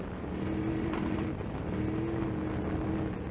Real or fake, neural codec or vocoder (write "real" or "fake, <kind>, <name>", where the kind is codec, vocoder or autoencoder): real